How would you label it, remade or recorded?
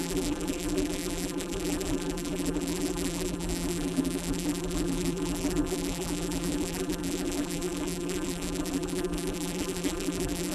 remade